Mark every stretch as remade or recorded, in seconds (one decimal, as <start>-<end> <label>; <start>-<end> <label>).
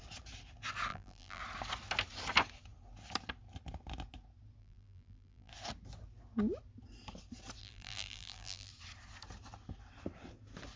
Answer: 0.0-0.9 recorded; 0.9-1.4 remade; 1.4-4.6 recorded; 4.6-5.5 remade; 5.5-7.6 recorded; 7.6-8.7 remade; 8.7-10.8 recorded